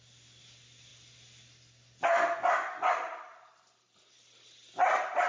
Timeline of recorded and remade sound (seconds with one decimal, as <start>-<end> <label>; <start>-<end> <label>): 0.0-5.3 recorded